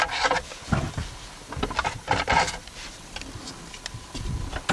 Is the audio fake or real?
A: real